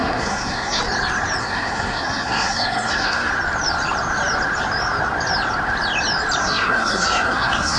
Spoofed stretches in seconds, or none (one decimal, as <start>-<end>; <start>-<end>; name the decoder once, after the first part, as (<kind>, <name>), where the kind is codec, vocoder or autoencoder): 0.0-0.8 (codec, SNAC); 1.4-3.3; 6.4-7.8